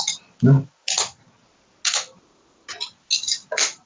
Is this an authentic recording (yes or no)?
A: yes